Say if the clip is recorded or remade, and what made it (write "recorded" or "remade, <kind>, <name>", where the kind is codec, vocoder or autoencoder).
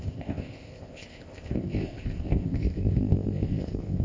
remade, codec, ZipCodec